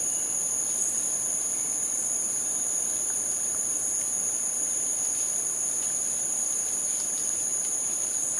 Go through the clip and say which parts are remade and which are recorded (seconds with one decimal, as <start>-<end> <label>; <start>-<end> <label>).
0.0-8.4 recorded